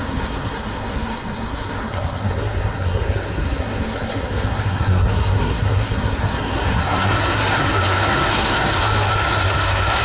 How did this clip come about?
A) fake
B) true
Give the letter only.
A